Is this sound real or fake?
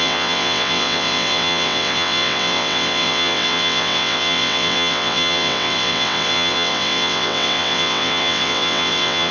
fake